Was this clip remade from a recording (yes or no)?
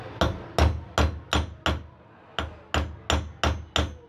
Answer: no